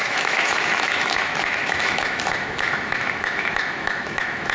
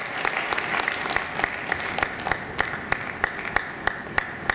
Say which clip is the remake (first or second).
first